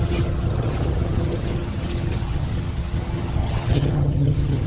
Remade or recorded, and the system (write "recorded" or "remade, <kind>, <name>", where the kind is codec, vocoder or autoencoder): remade, vocoder, HiFi-GAN